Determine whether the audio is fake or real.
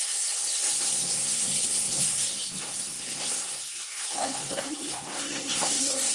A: fake